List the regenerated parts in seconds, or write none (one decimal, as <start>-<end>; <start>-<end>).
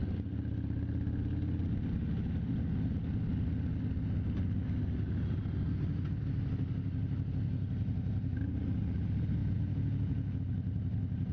9.4-10.4